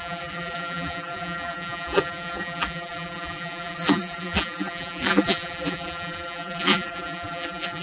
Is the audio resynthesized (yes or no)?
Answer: yes